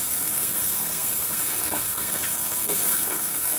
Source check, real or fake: fake